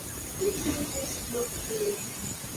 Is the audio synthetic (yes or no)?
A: no